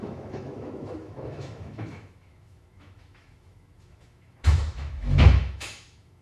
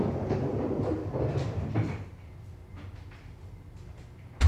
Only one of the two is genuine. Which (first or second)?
second